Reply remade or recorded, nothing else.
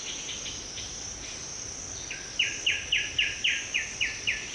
recorded